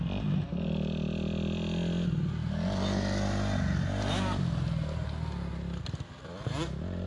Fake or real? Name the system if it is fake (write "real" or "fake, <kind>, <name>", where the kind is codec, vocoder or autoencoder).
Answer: real